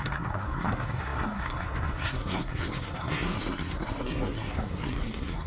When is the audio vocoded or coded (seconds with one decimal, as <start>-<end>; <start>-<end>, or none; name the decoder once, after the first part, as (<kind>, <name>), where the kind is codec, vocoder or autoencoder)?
0.0-5.5 (codec, SNAC)